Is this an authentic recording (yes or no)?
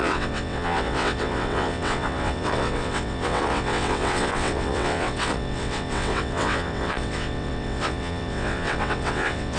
no